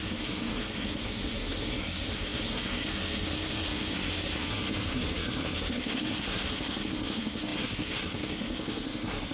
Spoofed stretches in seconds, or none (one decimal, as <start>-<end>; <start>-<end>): 0.0-9.3